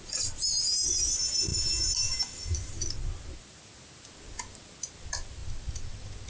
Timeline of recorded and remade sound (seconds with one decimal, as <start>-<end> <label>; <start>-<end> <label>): 0.0-6.3 recorded